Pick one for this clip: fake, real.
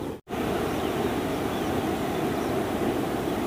fake